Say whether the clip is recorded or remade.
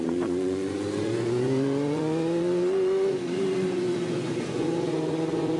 remade